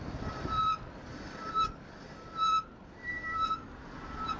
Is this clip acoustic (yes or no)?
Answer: yes